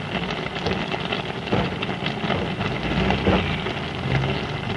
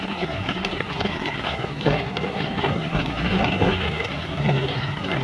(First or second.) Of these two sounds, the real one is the first